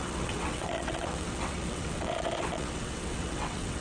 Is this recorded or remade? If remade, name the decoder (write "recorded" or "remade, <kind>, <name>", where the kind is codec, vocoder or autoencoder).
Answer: remade, vocoder, WaveNeXt